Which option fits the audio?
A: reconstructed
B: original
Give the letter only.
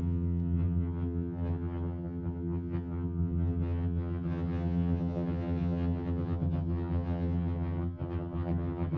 A